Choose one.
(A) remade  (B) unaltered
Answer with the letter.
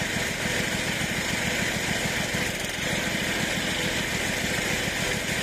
B